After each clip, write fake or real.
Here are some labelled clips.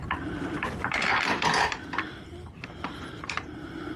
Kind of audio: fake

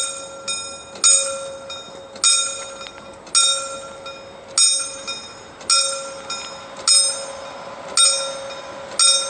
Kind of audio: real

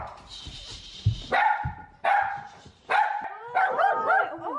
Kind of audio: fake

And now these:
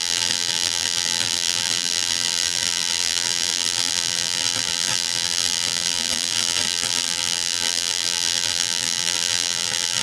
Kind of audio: fake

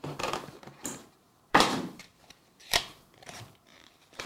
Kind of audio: fake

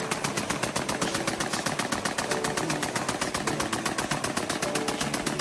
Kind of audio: real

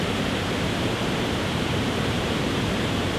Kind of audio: fake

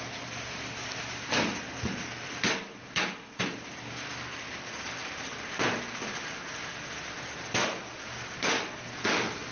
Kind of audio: real